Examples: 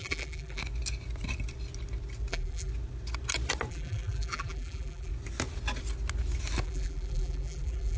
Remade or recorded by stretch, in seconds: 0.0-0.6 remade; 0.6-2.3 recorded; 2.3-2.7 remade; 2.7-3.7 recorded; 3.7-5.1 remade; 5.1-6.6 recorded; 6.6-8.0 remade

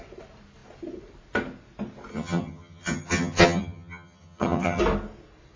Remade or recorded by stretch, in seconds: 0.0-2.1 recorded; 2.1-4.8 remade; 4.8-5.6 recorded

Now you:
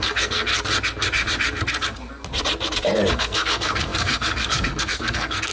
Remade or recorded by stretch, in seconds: 0.0-0.5 remade; 0.5-3.1 recorded; 3.1-5.5 remade

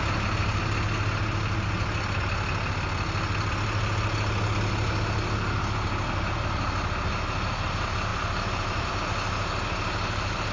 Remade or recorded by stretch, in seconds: 0.0-8.1 recorded; 8.1-8.9 remade; 8.9-10.5 recorded

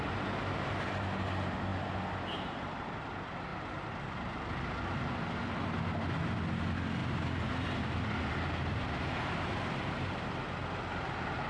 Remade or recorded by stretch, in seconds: 0.0-11.5 recorded

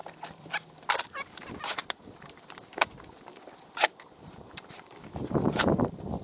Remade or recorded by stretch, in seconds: 0.0-6.2 remade

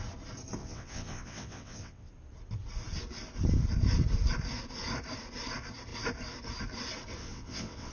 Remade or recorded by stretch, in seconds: 0.0-0.6 recorded; 0.6-2.1 remade; 2.1-7.2 recorded; 7.2-7.9 remade